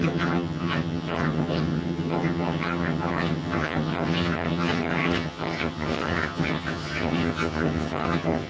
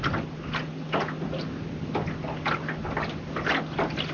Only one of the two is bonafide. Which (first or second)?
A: second